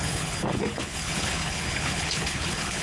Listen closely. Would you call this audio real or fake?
fake